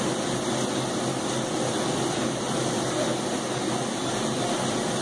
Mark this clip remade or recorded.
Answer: recorded